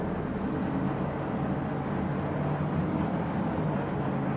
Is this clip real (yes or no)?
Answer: yes